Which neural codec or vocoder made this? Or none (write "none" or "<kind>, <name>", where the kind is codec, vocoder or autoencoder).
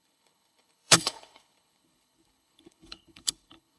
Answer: codec, HILCodec